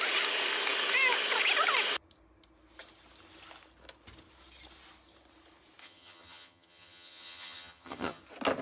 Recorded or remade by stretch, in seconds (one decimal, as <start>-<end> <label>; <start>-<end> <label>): 0.0-5.8 recorded; 5.8-8.2 remade; 8.2-8.6 recorded